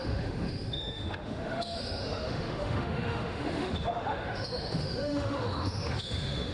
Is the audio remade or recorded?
remade